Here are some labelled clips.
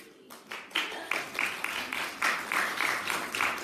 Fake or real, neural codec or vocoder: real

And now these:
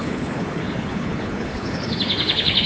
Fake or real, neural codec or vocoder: fake, codec, HILCodec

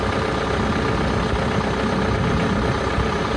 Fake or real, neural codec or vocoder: real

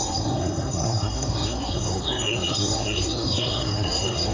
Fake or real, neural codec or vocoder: fake, codec, SNAC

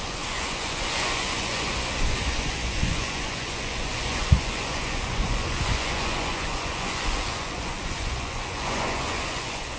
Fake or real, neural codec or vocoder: fake, vocoder, Vocos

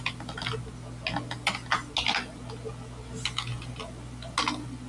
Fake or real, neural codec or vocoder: real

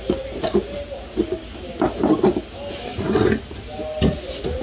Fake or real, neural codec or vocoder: real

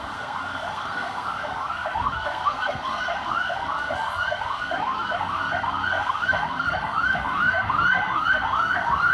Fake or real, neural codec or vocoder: fake, codec, SNAC